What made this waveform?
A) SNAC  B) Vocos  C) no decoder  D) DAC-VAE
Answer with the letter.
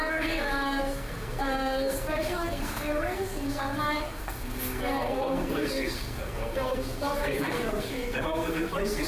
A